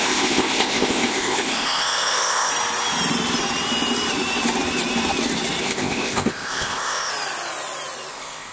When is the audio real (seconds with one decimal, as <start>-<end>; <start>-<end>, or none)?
2.5-5.6; 7.1-8.1